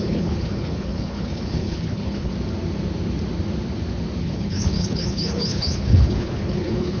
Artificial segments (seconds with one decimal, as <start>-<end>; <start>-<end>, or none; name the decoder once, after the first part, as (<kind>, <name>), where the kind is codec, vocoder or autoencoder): 0.0-2.3 (codec, HILCodec); 4.2-7.0